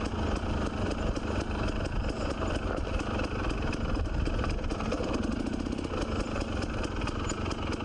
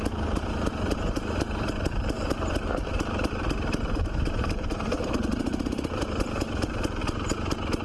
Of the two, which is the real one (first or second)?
first